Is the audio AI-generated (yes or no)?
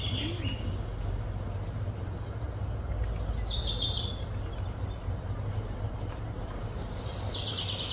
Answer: no